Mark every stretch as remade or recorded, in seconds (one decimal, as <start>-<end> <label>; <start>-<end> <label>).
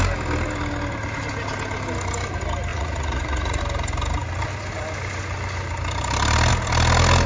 0.0-2.7 recorded; 2.7-3.6 remade; 3.6-7.3 recorded